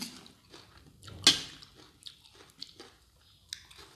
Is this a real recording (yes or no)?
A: yes